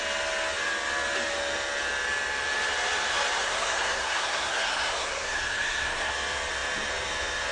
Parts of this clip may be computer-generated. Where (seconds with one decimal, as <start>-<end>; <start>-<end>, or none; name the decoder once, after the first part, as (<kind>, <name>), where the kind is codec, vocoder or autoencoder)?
3.4-6.1 (codec, SNAC)